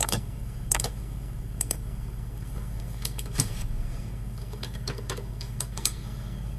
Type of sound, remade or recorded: remade